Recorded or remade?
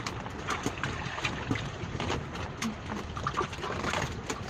recorded